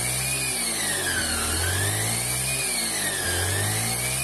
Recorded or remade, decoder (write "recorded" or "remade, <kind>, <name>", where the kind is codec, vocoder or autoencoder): recorded